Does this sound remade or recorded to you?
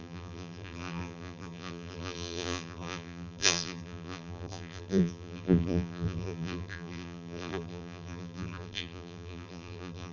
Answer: remade